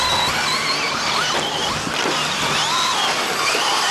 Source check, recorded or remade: recorded